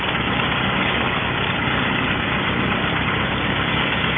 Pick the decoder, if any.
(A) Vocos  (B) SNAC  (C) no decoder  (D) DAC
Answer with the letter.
D